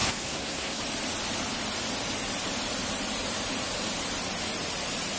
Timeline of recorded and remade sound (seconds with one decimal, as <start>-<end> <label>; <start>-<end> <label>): 0.0-0.8 remade; 0.8-5.2 recorded